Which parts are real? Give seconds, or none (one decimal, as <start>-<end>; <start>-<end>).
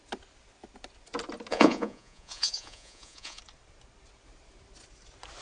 0.0-1.5; 3.4-5.4